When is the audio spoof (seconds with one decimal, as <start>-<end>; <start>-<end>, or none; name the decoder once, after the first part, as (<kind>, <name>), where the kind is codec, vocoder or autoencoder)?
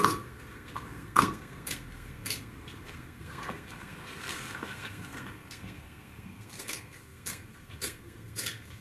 0.0-8.8 (codec, SNAC)